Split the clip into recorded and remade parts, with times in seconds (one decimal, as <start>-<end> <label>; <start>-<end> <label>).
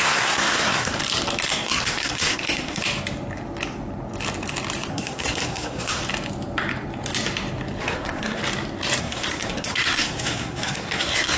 0.0-0.9 remade; 0.9-1.5 recorded; 1.5-2.8 remade; 2.8-4.9 recorded; 4.9-6.0 remade; 6.0-7.8 recorded; 7.8-8.4 remade; 8.4-9.0 recorded; 9.0-11.4 remade